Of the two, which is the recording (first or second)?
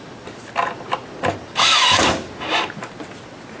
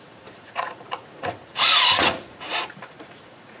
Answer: first